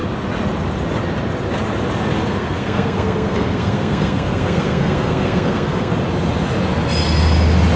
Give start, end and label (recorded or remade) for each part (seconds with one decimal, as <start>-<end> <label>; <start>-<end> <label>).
0.0-2.3 recorded; 2.3-5.9 remade; 5.9-7.8 recorded